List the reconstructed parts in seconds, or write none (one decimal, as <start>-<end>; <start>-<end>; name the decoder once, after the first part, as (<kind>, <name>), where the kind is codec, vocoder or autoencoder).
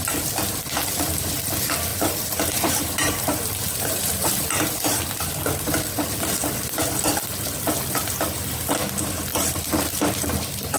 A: 1.9-5.1 (vocoder, BigVGAN v2)